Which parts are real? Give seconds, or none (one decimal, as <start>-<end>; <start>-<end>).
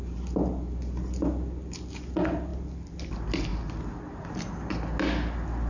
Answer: 0.0-5.7